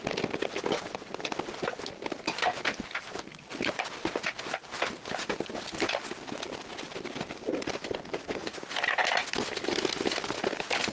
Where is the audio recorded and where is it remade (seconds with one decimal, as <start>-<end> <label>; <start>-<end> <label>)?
0.0-8.1 recorded; 8.1-8.6 remade; 8.6-10.9 recorded